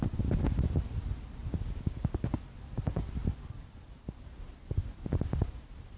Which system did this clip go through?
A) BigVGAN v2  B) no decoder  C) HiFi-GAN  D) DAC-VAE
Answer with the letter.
A